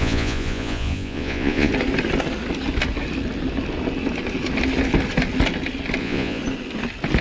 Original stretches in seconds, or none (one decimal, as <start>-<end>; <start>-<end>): 1.7-6.0; 6.4-7.2